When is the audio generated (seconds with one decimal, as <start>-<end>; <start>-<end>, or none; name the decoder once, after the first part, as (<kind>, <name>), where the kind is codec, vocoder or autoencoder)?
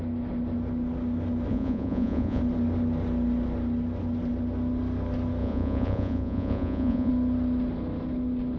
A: 1.5-2.4 (vocoder, Vocos); 5.4-7.1